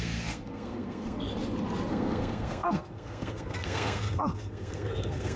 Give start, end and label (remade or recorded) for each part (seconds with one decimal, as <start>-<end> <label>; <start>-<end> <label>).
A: 0.0-1.3 remade; 1.3-1.9 recorded; 1.9-5.4 remade